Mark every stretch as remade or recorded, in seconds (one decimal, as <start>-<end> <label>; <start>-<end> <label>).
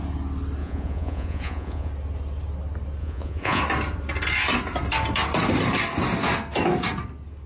0.0-0.6 recorded; 0.6-1.9 remade; 1.9-3.0 recorded; 3.0-3.6 remade; 3.6-7.5 recorded